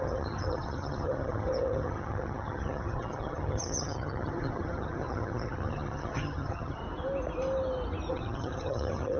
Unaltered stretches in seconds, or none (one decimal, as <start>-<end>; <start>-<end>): 6.8-8.1